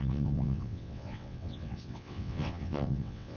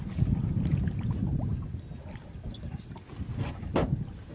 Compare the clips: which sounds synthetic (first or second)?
first